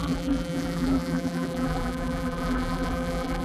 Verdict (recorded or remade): remade